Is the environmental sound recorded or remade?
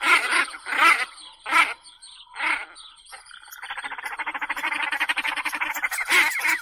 recorded